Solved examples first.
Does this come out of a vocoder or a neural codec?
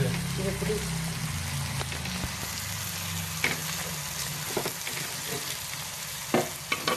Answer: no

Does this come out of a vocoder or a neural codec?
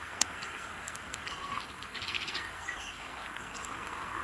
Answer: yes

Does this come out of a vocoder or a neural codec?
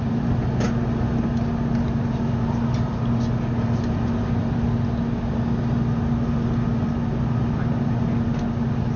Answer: no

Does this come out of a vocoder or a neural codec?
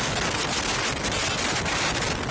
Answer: no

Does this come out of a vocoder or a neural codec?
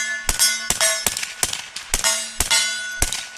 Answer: no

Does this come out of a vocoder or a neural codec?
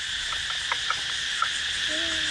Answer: no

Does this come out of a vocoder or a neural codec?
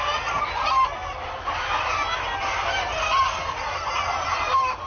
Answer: no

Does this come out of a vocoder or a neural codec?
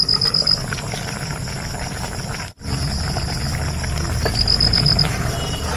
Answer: no